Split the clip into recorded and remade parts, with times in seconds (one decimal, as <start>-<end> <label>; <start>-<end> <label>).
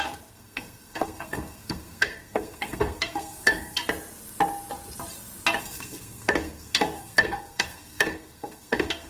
0.0-3.8 remade; 3.8-5.6 recorded; 5.6-9.1 remade